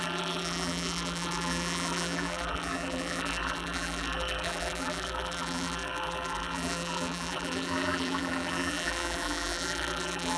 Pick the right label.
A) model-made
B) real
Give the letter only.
A